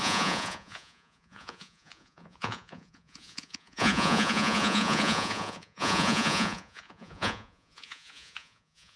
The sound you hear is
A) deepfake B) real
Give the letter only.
A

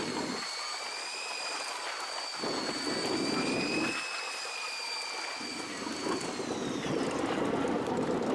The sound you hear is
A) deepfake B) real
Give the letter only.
B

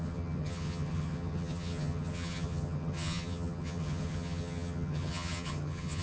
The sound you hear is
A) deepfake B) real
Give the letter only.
A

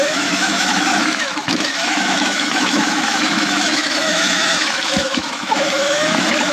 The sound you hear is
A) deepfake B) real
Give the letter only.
A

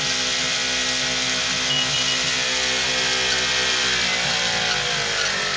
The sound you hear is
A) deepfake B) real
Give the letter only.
B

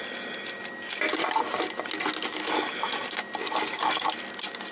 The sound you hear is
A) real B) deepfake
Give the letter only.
A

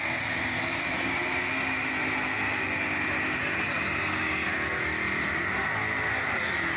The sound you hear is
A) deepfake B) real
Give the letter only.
B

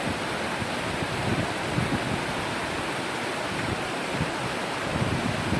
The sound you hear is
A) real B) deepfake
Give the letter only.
A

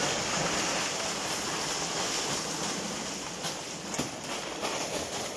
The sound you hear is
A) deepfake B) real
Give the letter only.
A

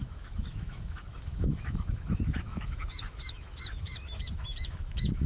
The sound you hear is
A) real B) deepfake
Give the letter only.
B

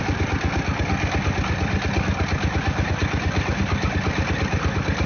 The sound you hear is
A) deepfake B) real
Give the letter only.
B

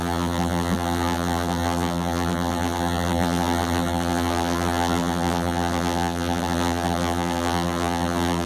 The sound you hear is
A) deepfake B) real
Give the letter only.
A